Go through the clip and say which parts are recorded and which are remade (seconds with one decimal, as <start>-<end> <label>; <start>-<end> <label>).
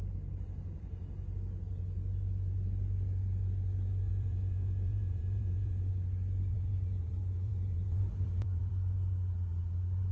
0.0-4.1 recorded; 4.1-5.9 remade; 5.9-6.5 recorded; 6.5-8.7 remade; 8.7-10.1 recorded